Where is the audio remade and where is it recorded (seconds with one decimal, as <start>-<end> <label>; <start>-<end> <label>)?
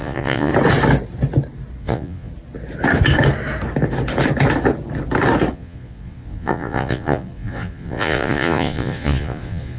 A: 0.0-0.5 remade; 0.5-1.8 recorded; 1.8-2.3 remade; 2.3-5.5 recorded; 5.5-9.8 remade